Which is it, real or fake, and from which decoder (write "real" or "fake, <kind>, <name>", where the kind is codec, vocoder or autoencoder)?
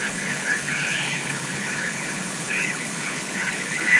fake, codec, HILCodec